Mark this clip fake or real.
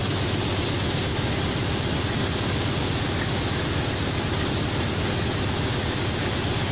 real